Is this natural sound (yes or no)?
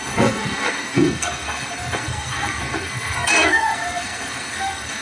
no